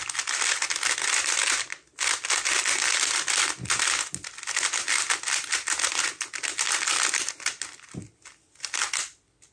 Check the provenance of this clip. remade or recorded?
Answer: recorded